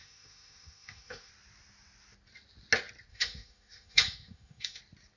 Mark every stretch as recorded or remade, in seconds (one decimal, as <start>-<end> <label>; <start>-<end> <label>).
0.0-1.3 remade; 1.3-3.1 recorded; 3.1-4.8 remade; 4.8-5.2 recorded